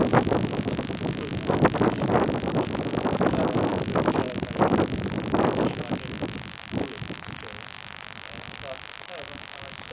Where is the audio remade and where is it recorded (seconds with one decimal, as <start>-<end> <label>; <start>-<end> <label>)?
0.0-9.9 recorded